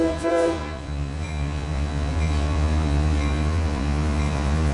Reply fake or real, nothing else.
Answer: fake